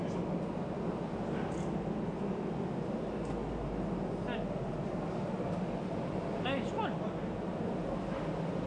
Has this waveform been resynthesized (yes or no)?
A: no